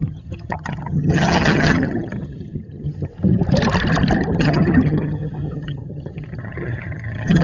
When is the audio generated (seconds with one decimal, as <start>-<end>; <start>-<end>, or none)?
0.0-3.1; 4.3-7.4